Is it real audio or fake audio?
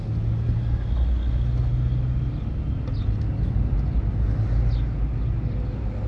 real